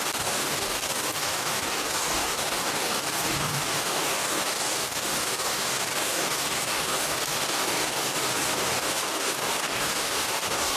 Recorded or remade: remade